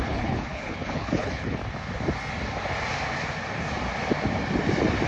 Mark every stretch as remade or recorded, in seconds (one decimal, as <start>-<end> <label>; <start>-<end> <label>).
0.0-1.6 remade; 1.6-5.1 recorded